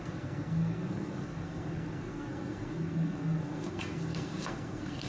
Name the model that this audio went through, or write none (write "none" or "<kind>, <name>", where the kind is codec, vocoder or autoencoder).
codec, SNAC